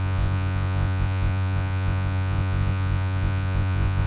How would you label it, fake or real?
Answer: fake